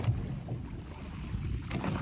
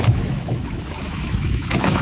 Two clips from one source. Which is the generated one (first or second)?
second